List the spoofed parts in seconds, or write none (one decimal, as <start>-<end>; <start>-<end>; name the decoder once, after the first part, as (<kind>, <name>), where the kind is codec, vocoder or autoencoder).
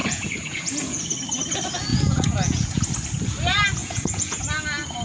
0.0-1.0 (vocoder, Vocos); 1.9-2.8; 3.8-4.4